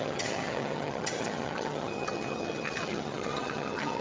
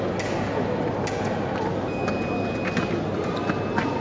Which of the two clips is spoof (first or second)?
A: first